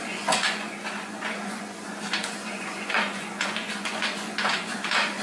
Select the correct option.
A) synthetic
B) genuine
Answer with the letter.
A